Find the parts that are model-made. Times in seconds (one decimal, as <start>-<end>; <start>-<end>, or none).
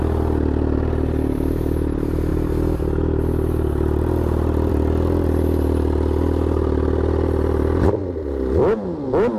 none